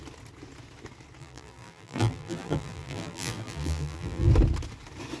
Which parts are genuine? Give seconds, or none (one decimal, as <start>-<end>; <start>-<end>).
0.0-1.2; 4.3-5.2